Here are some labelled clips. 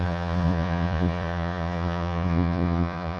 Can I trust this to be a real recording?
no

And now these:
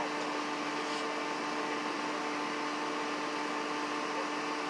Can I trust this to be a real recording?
yes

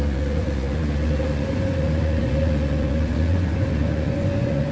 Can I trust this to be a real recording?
no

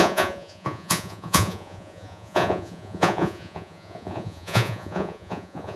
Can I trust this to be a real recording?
no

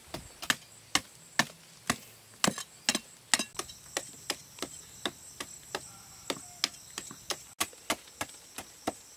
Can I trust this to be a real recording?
yes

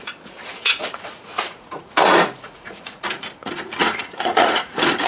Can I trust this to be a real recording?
no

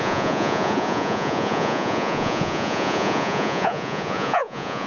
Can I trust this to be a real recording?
no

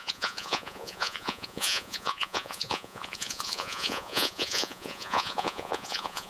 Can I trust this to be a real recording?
no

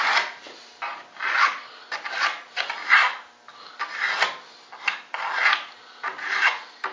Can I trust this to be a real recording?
yes